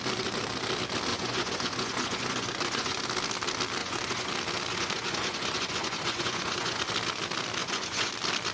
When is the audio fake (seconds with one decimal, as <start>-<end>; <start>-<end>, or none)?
1.1-3.0; 3.8-4.3; 4.7-6.8; 7.6-8.1

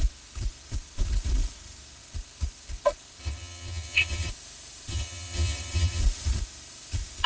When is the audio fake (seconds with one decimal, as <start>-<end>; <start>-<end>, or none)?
3.2-4.3; 4.9-6.0